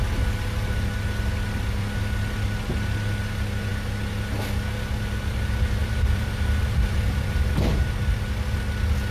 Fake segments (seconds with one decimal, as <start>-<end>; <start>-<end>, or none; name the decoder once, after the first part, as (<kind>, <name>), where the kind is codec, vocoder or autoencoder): 5.8-7.8 (vocoder, BigVGAN v2)